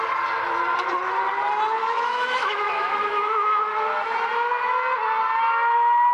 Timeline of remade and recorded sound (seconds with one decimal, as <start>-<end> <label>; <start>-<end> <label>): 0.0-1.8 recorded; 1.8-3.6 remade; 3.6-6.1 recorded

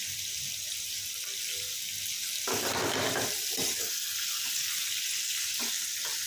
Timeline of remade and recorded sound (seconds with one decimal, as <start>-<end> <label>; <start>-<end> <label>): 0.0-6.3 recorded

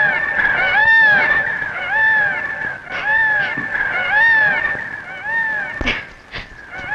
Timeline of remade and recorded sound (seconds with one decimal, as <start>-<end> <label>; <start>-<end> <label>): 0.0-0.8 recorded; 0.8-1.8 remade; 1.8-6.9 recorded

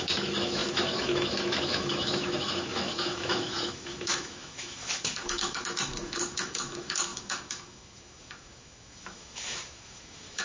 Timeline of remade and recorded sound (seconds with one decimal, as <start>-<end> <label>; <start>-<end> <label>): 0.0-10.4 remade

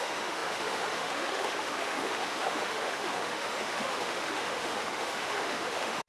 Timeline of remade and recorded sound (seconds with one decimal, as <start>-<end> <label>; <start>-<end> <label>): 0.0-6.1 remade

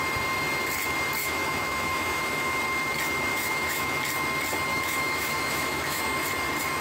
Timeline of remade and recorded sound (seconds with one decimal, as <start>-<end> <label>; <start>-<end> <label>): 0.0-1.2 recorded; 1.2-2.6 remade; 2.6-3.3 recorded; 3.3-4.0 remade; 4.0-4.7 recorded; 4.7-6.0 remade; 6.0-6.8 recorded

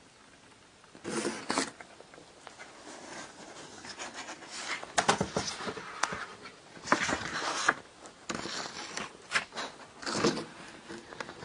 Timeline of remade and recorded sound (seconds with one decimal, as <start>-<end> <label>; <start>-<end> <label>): 0.0-11.4 recorded

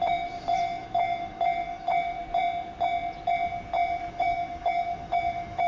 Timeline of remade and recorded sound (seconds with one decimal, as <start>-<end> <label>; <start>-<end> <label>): 0.0-2.2 remade; 2.2-4.1 recorded; 4.1-5.7 remade